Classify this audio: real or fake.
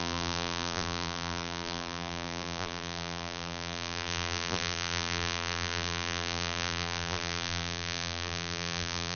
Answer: fake